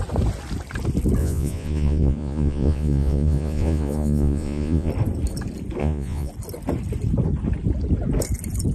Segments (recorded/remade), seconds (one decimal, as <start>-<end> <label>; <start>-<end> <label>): 0.0-1.2 recorded; 1.2-4.9 remade; 4.9-5.8 recorded; 5.8-6.3 remade; 6.3-8.7 recorded